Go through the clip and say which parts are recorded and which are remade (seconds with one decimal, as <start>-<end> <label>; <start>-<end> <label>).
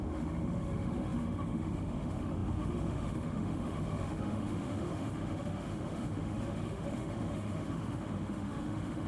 0.0-9.1 remade